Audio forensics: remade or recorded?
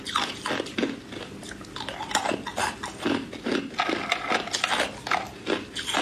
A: recorded